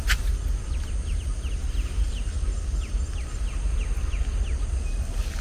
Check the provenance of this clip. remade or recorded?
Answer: recorded